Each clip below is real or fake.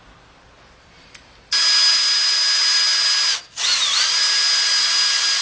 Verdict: real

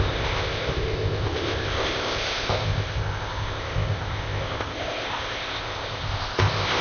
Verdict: fake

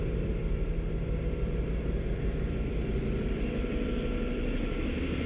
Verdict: real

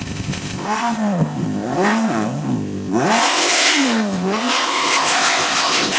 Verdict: fake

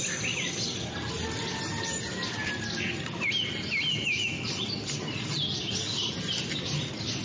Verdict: real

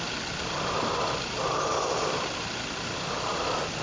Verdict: real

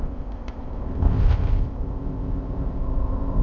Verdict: fake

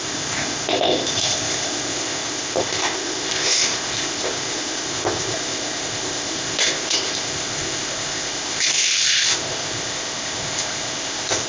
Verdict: fake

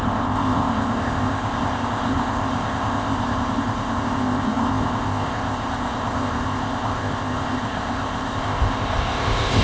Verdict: fake